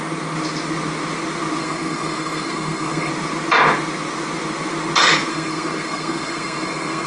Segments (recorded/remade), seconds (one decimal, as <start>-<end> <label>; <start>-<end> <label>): 0.0-1.6 recorded; 1.6-3.1 remade; 3.1-5.3 recorded; 5.3-7.1 remade